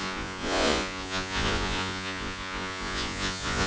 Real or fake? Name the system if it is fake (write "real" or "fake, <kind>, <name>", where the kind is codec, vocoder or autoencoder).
fake, vocoder, Vocos